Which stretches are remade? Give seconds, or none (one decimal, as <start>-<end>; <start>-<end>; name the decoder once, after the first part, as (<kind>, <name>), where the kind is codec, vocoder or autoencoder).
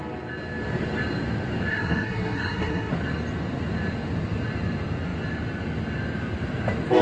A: 1.7-2.9 (codec, SNAC)